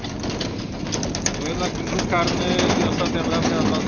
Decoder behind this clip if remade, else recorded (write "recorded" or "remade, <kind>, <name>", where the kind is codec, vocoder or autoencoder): recorded